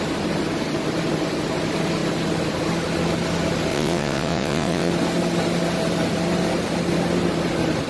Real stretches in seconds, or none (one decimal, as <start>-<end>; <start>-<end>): 0.0-3.7; 4.9-7.9